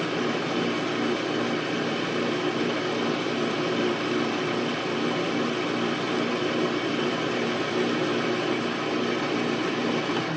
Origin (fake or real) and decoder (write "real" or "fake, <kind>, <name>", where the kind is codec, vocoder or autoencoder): fake, vocoder, BigVGAN v2